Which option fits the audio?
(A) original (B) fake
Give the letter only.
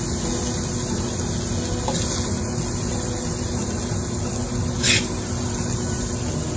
A